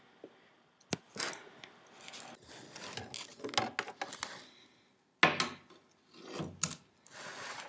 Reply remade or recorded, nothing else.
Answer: recorded